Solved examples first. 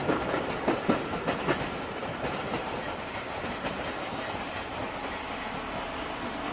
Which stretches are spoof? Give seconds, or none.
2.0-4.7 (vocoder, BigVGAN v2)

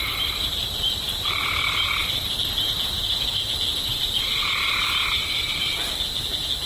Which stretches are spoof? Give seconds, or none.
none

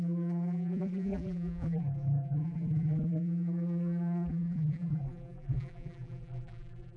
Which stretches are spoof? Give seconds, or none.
0.0-7.0 (vocoder, BigVGAN v2)